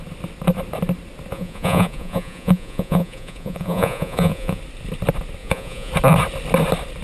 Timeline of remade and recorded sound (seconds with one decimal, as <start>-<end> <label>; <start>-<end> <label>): 0.0-1.3 recorded; 1.3-4.6 remade; 4.6-5.4 recorded; 5.4-5.9 remade; 5.9-7.0 recorded